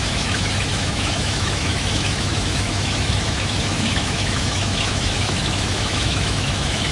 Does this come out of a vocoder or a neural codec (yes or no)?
yes